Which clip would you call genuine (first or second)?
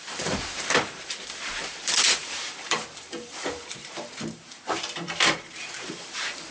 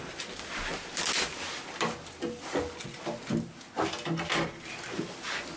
second